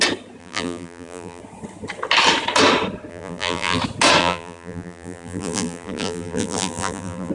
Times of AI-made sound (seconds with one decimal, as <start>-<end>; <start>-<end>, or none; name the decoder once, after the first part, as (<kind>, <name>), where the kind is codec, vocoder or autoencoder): 0.4-1.4 (vocoder, BigVGAN v2); 3.1-3.8; 4.2-7.3